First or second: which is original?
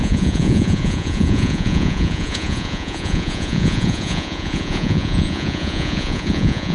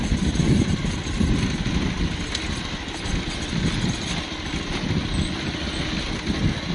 second